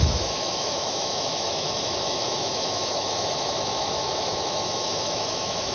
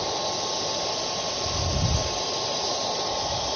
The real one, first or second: second